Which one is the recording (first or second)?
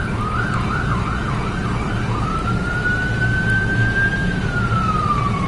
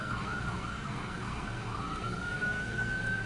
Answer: first